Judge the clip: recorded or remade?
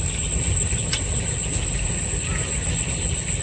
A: recorded